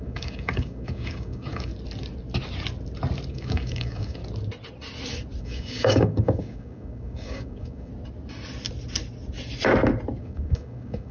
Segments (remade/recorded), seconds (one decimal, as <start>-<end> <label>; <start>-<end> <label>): 0.0-1.7 remade; 1.7-3.3 recorded; 3.3-4.2 remade; 4.2-5.4 recorded; 5.4-7.9 remade; 7.9-10.2 recorded; 10.2-11.1 remade